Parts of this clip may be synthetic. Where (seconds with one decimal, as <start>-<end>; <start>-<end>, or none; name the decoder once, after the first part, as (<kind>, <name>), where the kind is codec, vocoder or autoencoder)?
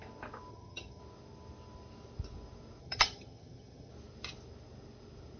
0.5-1.0 (vocoder, HiFi-GAN); 2.8-3.9